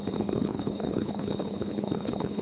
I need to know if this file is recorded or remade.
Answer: remade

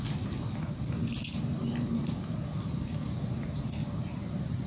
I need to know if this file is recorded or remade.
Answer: recorded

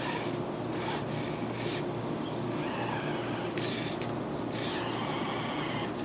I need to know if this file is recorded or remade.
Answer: recorded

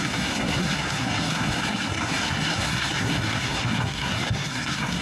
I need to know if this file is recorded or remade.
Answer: remade